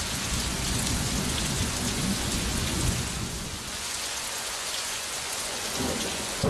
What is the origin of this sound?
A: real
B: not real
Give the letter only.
B